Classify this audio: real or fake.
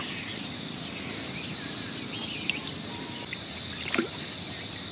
real